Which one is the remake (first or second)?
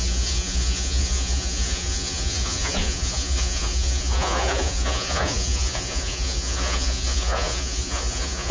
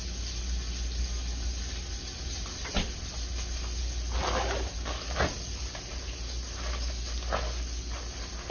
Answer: first